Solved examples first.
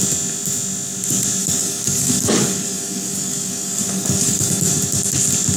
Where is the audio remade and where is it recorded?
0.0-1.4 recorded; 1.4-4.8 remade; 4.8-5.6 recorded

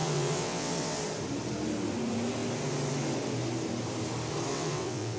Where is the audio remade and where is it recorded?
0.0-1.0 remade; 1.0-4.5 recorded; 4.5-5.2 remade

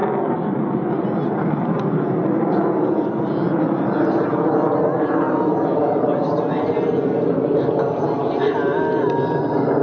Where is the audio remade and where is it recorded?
0.0-9.8 recorded